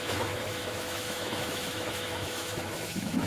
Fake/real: fake